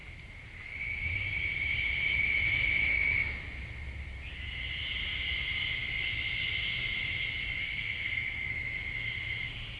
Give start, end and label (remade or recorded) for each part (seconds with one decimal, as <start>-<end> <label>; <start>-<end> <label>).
0.0-7.6 recorded; 7.6-8.5 remade; 8.5-9.8 recorded